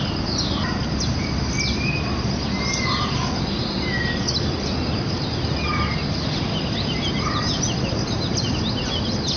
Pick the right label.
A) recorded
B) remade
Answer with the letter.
A